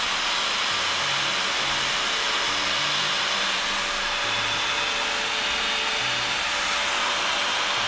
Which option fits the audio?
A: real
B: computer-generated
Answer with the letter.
A